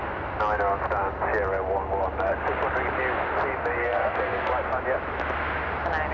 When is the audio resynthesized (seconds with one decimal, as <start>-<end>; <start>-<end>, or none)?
3.8-4.5